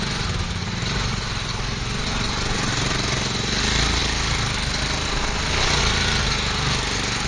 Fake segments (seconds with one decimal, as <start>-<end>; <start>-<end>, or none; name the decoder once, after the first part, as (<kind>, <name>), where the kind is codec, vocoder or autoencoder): none